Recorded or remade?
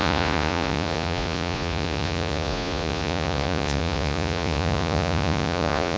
remade